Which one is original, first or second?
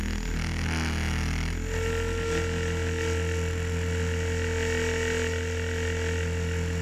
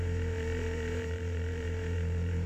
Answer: first